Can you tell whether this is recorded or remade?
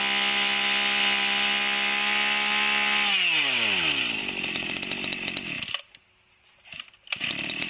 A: recorded